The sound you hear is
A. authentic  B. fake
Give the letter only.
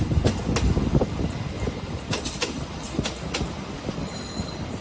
A